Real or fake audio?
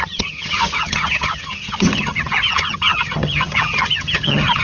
fake